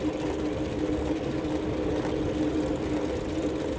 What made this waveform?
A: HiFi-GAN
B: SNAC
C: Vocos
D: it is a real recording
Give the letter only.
D